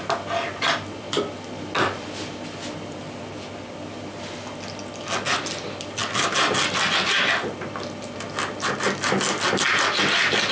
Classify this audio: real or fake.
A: real